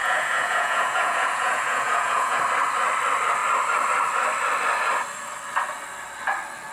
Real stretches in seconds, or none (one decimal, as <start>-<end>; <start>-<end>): 2.4-6.7